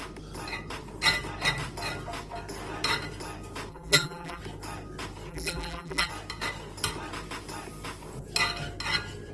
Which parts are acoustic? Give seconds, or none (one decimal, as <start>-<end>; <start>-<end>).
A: 0.0-3.7; 4.4-5.3; 6.1-9.3